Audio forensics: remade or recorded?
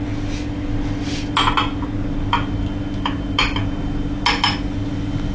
recorded